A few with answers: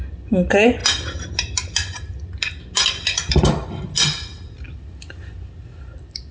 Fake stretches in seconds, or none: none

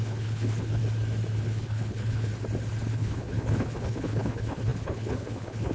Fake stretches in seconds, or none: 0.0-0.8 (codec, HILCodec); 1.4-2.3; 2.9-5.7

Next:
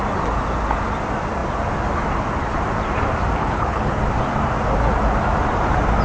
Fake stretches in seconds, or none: 3.4-4.0 (codec, HILCodec)

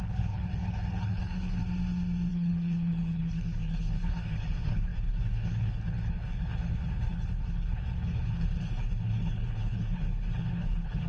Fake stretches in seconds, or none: 0.0-1.6 (codec, HILCodec); 2.3-11.1

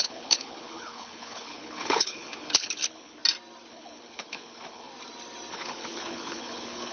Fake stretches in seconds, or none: 0.0-3.2 (codec, HILCodec); 3.7-4.9; 5.5-6.9

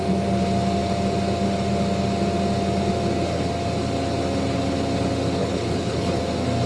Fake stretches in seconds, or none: 5.4-6.2 (codec, HILCodec)